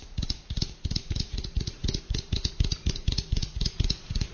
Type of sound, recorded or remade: remade